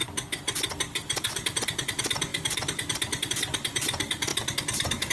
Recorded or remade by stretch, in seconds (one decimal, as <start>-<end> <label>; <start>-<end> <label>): 0.0-5.1 recorded